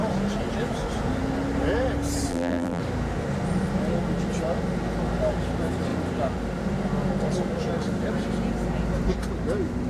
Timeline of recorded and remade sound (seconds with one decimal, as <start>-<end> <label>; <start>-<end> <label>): 0.0-2.3 recorded; 2.3-2.8 remade; 2.8-9.9 recorded